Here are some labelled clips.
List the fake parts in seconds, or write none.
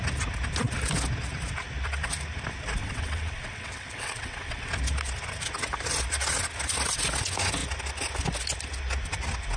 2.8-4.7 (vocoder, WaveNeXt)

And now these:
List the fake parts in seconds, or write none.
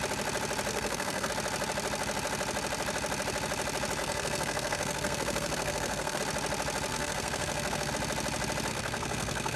0.7-1.3 (codec, SNAC); 4.0-6.2; 6.9-7.9; 8.7-9.6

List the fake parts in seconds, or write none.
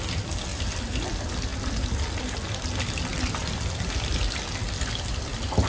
none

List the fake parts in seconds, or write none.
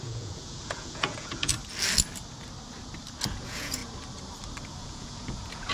0.0-1.5 (vocoder, Vocos); 3.3-3.8; 4.8-5.7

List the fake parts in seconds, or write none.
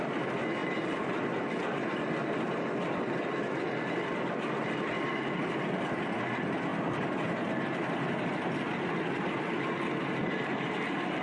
0.6-1.2 (vocoder, BigVGAN v2)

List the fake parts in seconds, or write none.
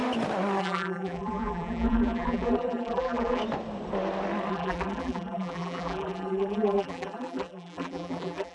0.6-3.4 (vocoder, BigVGAN v2); 4.5-8.5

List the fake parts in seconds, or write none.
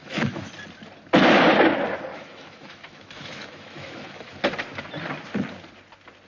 0.0-0.5 (autoencoder, DAC-VAE); 2.1-4.3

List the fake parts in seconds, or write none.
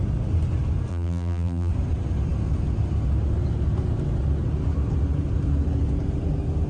0.9-1.7 (vocoder, BigVGAN v2)